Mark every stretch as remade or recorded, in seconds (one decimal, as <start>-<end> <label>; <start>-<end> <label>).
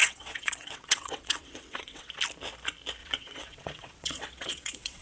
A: 0.0-2.1 remade; 2.1-3.0 recorded; 3.0-5.0 remade